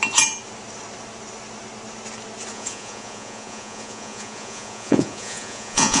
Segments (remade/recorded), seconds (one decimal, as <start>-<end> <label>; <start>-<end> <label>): 0.0-2.5 recorded; 2.5-6.0 remade